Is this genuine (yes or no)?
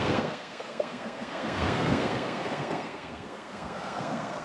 no